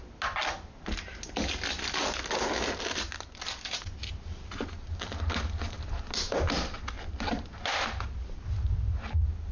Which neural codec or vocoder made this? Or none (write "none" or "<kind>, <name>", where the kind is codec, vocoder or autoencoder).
none